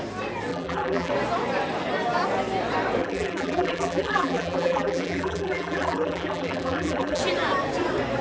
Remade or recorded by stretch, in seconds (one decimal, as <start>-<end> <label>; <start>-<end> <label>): 0.0-0.5 recorded; 0.5-1.1 remade; 1.1-3.0 recorded; 3.0-7.2 remade; 7.2-8.2 recorded